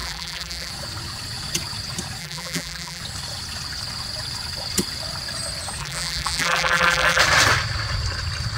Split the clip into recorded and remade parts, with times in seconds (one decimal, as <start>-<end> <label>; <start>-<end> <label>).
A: 0.0-0.7 remade; 0.7-2.2 recorded; 2.2-3.0 remade; 3.0-5.8 recorded; 5.8-7.2 remade; 7.2-8.6 recorded